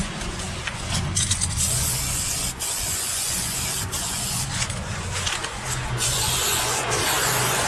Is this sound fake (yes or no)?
yes